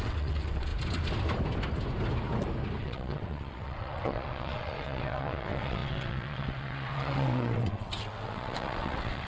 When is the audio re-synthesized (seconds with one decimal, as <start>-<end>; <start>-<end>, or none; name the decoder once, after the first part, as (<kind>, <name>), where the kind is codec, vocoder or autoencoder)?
0.0-0.7 (vocoder, WaveNeXt); 2.8-9.3